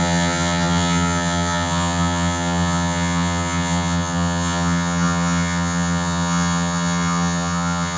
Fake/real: fake